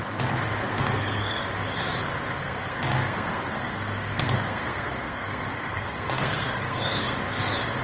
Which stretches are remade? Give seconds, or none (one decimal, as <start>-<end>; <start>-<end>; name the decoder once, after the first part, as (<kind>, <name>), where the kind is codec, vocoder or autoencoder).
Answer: 0.7-1.4 (codec, SNAC); 2.4-7.1